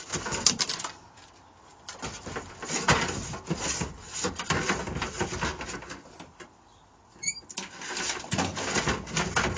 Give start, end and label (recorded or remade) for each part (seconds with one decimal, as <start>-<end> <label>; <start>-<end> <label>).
0.0-9.6 recorded